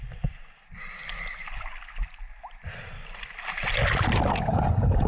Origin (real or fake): real